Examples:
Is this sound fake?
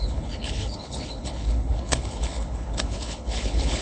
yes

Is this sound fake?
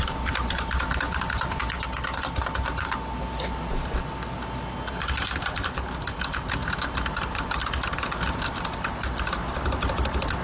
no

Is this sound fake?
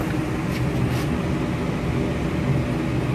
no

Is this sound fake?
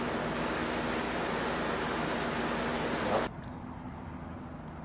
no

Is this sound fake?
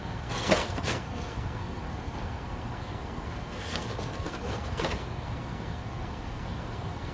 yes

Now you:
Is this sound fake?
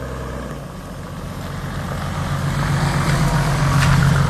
no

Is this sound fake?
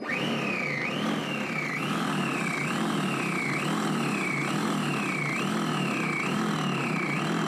no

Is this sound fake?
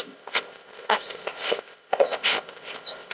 yes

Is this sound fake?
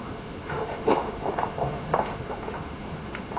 yes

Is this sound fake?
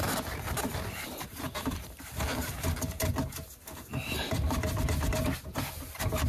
yes